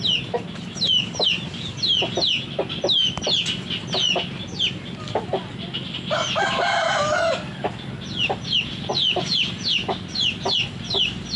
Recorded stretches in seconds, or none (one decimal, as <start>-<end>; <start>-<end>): 0.0-11.4